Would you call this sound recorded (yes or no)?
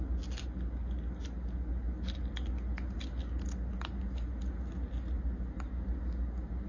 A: yes